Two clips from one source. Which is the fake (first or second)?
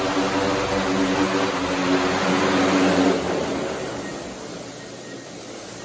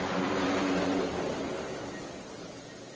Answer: second